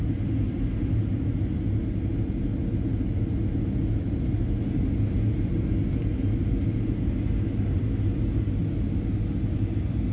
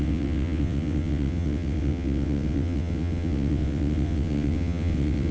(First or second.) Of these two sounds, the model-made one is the second